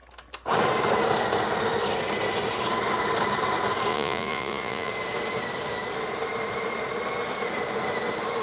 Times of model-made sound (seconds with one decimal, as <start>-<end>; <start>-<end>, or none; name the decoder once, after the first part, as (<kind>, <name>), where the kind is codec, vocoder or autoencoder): 3.9-4.9 (vocoder, Vocos)